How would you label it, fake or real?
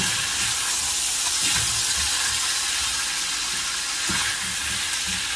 real